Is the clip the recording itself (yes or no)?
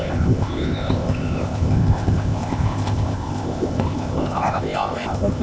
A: no